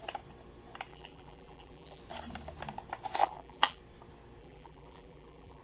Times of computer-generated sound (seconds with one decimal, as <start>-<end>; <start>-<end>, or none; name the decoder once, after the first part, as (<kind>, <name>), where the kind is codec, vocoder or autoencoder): 0.9-2.0 (vocoder, BigVGAN v2); 3.2-3.8; 4.4-5.6